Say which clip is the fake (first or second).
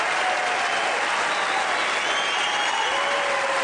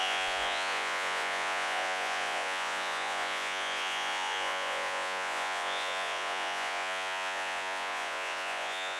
second